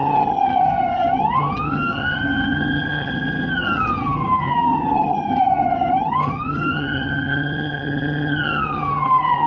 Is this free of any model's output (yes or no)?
no